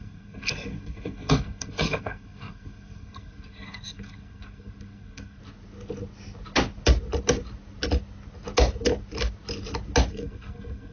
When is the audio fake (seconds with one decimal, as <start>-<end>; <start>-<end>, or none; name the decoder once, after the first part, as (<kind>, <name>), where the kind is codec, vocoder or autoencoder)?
0.0-5.4 (codec, SNAC); 10.1-10.9